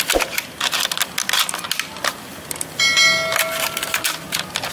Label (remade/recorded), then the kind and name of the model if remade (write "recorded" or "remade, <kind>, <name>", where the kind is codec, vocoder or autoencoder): recorded